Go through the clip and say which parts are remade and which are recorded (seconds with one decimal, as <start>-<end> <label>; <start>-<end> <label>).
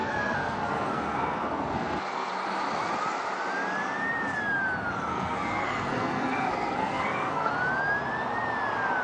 0.0-2.3 remade; 2.3-5.1 recorded; 5.1-7.5 remade; 7.5-9.0 recorded